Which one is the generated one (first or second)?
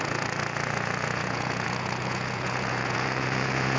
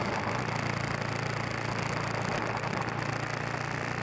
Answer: first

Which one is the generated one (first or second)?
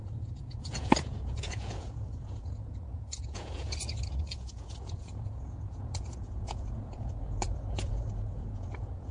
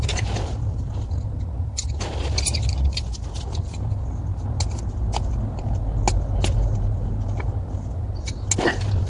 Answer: first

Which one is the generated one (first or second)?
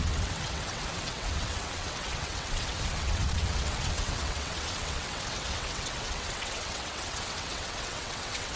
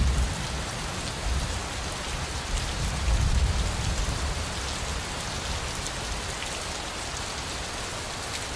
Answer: first